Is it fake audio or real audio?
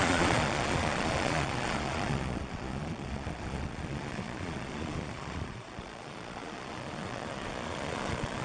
fake